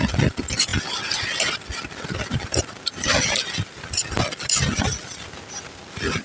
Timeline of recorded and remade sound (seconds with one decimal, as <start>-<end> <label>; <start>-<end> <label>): 0.0-6.2 recorded